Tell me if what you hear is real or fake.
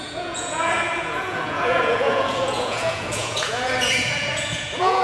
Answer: fake